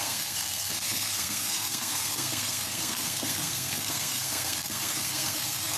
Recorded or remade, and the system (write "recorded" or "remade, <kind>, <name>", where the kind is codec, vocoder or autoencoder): remade, codec, SNAC